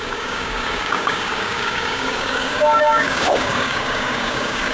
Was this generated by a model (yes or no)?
yes